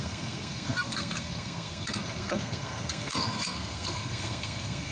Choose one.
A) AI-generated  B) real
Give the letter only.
A